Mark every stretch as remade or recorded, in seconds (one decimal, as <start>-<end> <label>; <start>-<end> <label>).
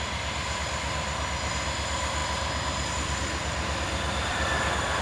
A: 0.0-2.2 remade; 2.2-2.9 recorded; 2.9-5.0 remade